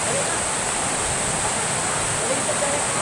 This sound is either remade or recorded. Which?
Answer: recorded